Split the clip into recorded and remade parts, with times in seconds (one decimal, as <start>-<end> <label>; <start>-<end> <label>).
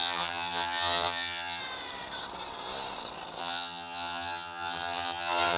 0.0-1.6 remade; 1.6-3.4 recorded; 3.4-5.6 remade